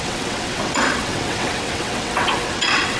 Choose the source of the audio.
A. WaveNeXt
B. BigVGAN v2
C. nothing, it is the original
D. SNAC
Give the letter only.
A